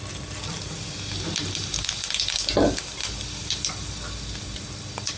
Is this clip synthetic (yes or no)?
no